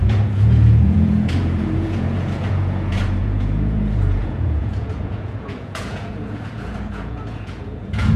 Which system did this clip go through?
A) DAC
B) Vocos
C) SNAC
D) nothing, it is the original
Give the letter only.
B